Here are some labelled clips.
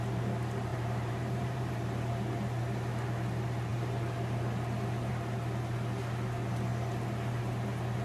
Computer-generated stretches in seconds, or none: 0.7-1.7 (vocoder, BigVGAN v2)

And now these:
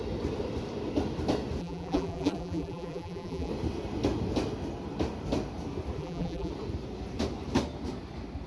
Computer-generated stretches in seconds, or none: 1.6-3.5 (vocoder, BigVGAN v2); 6.0-6.5

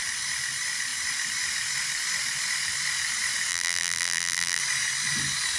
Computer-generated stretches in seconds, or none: 3.5-4.6 (vocoder, BigVGAN v2)

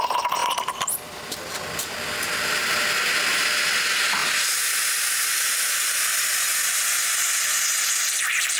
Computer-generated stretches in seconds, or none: 0.4-1.4 (vocoder, BigVGAN v2)

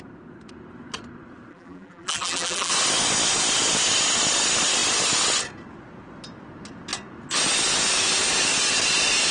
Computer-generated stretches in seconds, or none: 1.5-2.7 (vocoder, BigVGAN v2)

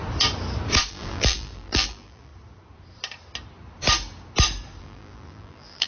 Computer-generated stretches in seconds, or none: 0.9-2.3 (vocoder, BigVGAN v2); 4.8-5.9

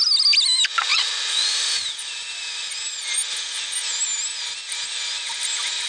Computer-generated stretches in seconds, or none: 0.9-2.5 (vocoder, BigVGAN v2)

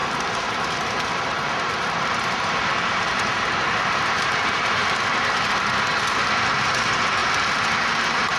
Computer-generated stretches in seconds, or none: 0.0-4.8 (vocoder, BigVGAN v2)